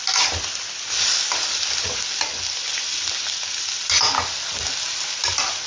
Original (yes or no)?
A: yes